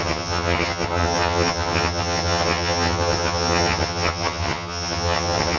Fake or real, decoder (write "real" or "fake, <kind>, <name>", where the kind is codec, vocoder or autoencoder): fake, vocoder, HiFi-GAN